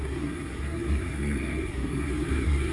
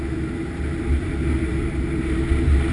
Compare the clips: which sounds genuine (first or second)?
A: second